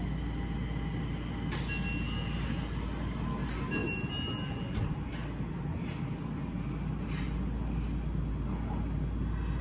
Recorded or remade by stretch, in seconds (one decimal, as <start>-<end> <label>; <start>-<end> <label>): 0.0-9.6 recorded